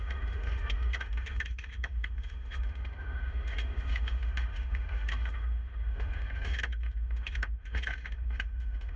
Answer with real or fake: fake